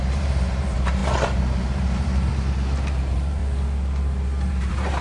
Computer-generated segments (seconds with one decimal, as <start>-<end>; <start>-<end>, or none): 0.0-3.4; 4.5-5.0